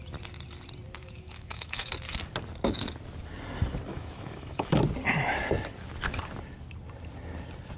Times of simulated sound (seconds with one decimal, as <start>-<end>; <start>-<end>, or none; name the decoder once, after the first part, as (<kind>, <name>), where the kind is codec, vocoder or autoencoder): 1.0-1.9 (autoencoder, DAC-VAE); 3.9-4.8